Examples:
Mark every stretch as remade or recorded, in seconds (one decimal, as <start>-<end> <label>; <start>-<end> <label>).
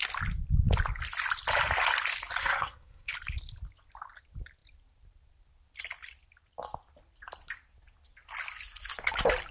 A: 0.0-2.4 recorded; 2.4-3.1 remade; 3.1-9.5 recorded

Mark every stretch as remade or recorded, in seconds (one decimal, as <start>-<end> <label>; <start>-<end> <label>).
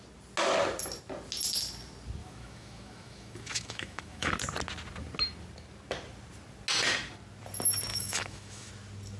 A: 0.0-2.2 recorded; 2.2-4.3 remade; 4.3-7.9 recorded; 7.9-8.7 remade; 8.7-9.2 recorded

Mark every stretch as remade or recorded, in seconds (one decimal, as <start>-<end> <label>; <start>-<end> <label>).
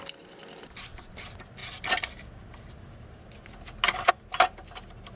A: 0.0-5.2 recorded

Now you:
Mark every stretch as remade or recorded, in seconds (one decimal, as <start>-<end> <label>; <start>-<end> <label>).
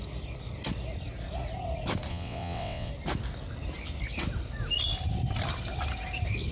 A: 0.0-2.1 recorded; 2.1-2.9 remade; 2.9-6.5 recorded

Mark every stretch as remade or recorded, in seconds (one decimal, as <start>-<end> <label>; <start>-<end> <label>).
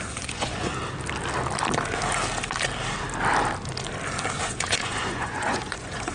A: 0.0-0.7 remade; 0.7-4.4 recorded; 4.4-6.1 remade